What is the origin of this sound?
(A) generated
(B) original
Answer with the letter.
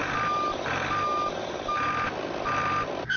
B